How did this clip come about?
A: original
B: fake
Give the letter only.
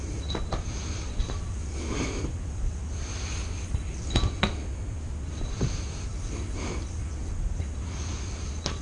A